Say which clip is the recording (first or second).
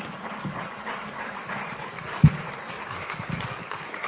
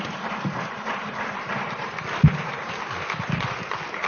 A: second